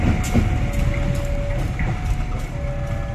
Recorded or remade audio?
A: recorded